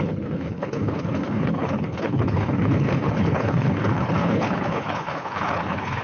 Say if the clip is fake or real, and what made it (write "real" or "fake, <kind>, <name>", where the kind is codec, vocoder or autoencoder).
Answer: fake, codec, HILCodec